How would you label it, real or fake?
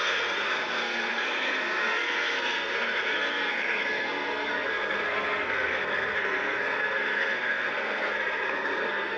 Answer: fake